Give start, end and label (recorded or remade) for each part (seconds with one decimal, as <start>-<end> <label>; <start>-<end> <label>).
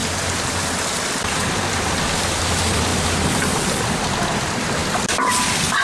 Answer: 0.0-4.8 remade; 4.8-5.8 recorded